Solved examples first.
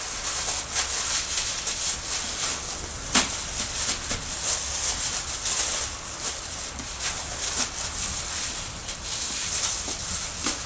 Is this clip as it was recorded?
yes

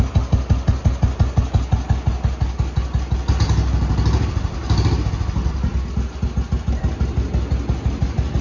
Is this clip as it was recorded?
yes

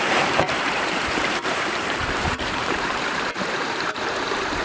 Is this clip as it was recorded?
no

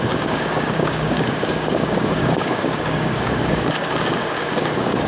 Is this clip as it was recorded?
no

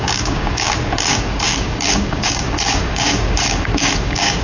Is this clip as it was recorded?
no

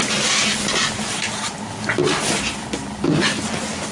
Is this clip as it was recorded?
yes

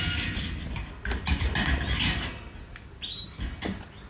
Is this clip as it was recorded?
yes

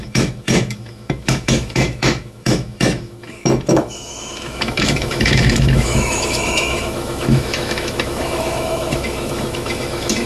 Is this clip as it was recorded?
no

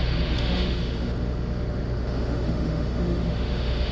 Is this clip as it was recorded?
no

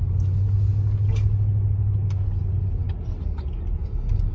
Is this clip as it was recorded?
yes